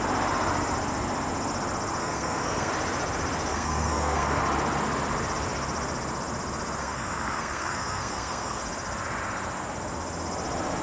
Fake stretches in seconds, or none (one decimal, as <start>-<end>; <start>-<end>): 2.0-2.7; 3.5-4.4; 6.8-8.6